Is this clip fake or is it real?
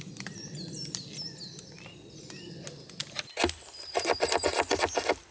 real